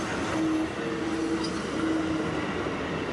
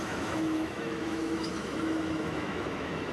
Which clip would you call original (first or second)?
first